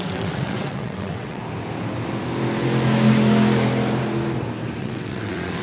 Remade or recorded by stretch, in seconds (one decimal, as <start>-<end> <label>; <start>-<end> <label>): 0.0-1.4 remade; 1.4-4.8 recorded; 4.8-5.6 remade